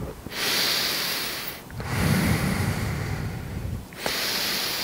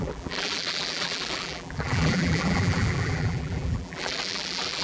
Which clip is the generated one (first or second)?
second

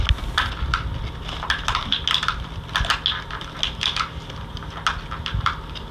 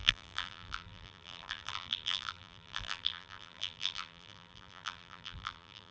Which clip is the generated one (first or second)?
second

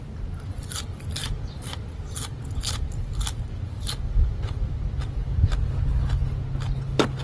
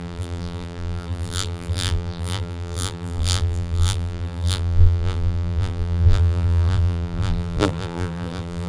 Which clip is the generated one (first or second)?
second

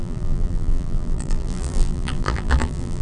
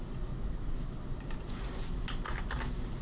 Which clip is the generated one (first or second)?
first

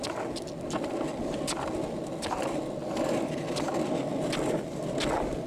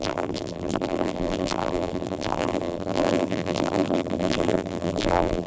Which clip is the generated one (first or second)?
second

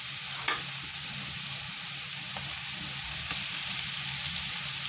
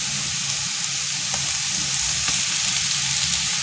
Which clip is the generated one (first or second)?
first